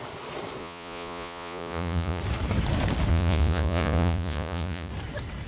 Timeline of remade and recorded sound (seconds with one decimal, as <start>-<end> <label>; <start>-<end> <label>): 0.0-0.6 recorded; 0.6-2.2 remade; 2.2-3.1 recorded; 3.1-4.9 remade; 4.9-5.5 recorded